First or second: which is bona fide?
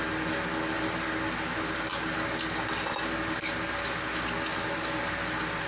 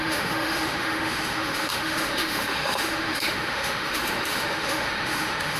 first